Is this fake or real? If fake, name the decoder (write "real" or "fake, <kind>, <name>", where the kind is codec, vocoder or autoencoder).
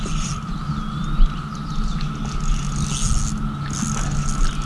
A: real